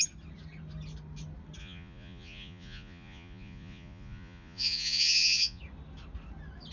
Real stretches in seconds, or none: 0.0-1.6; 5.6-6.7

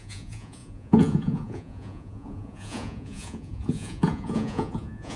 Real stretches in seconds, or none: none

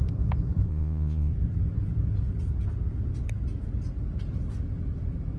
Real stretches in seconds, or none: 0.0-0.7; 1.3-5.4

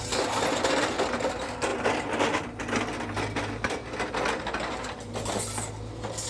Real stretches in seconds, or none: 0.0-6.3

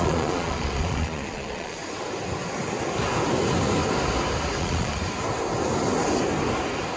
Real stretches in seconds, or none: 1.8-4.6; 5.0-7.0